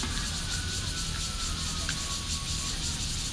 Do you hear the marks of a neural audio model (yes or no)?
no